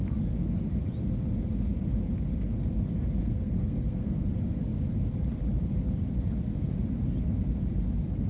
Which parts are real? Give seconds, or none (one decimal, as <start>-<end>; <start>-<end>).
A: 0.0-3.2; 4.3-8.3